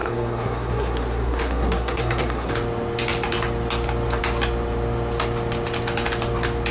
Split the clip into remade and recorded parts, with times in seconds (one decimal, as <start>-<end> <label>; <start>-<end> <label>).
0.0-2.5 remade; 2.5-6.7 recorded